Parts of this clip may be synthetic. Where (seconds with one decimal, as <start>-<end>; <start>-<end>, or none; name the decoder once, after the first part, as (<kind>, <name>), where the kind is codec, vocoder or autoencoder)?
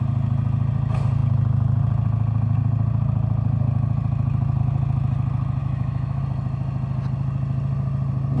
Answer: 5.6-6.2 (autoencoder, DAC-VAE)